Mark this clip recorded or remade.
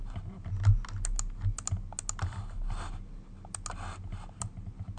recorded